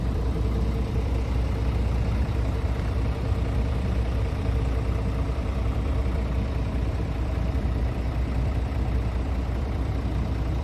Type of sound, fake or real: fake